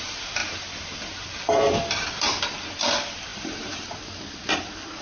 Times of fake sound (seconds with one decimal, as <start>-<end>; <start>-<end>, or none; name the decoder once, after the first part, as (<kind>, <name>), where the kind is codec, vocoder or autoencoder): 0.0-5.0 (vocoder, BigVGAN v2)